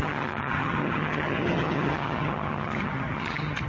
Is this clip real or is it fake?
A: fake